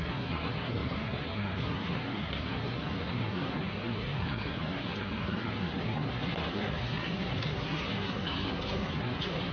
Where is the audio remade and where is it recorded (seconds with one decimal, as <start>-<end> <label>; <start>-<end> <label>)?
0.0-9.5 remade